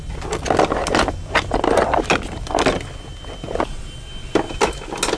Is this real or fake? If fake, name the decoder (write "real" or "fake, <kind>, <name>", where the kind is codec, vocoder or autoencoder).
real